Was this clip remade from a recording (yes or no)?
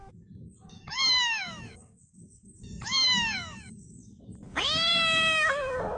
yes